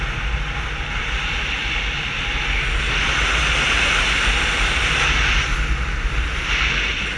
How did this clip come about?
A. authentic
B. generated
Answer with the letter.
A